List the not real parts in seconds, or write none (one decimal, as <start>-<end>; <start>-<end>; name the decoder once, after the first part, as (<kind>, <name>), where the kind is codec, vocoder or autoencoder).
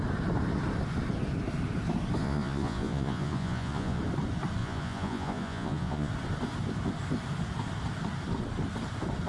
2.2-4.0 (vocoder, Vocos); 4.6-6.1